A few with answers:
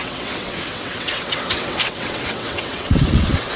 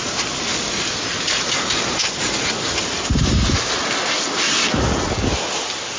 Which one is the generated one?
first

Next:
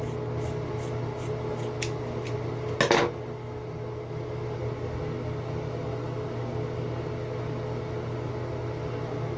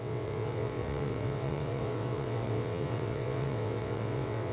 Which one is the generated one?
second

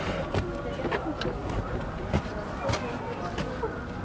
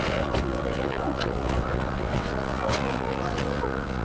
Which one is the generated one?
second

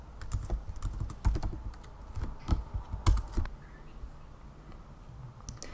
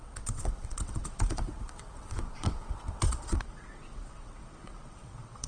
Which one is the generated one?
second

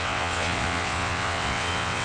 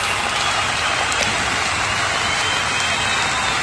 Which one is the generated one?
first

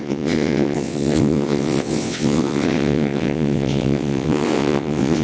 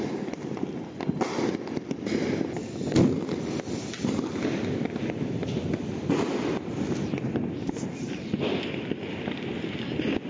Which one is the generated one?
first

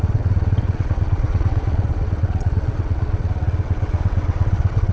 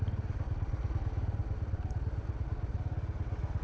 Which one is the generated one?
first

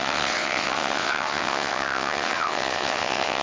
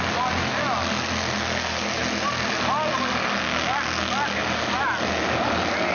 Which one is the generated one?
first